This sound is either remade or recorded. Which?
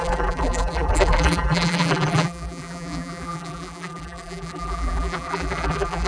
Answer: remade